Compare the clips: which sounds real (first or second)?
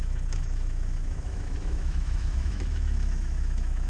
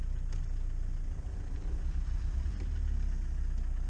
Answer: second